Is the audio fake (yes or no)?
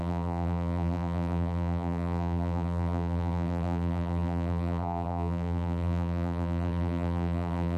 yes